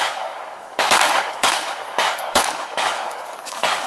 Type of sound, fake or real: fake